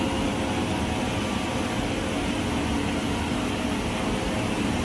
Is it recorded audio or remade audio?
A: recorded